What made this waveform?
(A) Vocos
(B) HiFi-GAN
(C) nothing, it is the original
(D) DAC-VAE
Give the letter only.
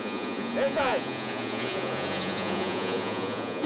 A